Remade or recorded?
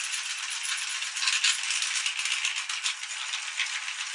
recorded